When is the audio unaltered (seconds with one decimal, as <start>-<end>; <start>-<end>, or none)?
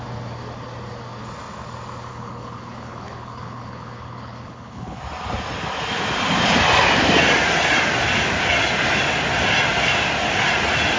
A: 0.0-2.1; 5.0-11.0